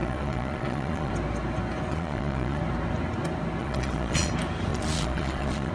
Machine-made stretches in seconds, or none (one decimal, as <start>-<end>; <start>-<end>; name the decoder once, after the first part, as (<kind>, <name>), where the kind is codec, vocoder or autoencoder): 0.0-1.1 (vocoder, Vocos); 1.9-2.6; 3.6-4.3; 4.7-5.7